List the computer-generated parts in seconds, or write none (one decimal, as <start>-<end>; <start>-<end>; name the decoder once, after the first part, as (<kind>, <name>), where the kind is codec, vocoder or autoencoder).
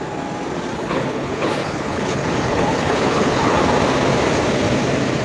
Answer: 0.7-3.6 (codec, HILCodec)